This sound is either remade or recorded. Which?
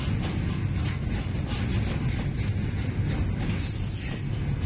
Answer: recorded